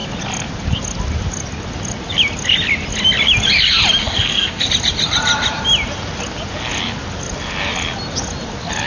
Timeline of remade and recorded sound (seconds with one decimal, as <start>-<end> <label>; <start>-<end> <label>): 0.0-4.0 recorded; 4.0-4.7 remade; 4.7-8.9 recorded